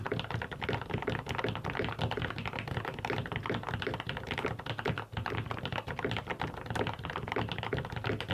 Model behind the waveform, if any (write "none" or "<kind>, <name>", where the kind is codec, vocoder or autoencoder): none